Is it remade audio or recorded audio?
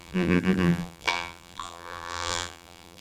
remade